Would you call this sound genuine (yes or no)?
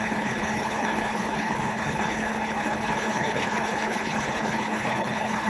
no